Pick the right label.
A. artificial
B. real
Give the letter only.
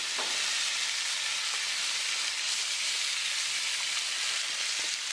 B